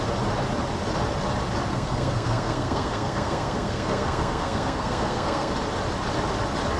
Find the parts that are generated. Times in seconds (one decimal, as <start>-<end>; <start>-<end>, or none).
1.7-5.5

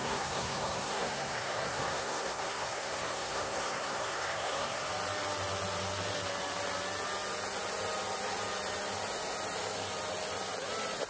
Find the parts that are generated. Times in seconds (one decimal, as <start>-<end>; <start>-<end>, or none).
0.0-4.9

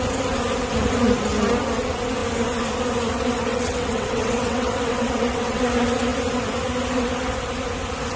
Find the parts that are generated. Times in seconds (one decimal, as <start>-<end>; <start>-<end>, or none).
3.5-5.6

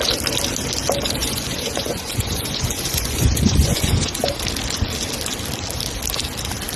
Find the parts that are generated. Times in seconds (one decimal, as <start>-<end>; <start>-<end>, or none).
1.2-4.3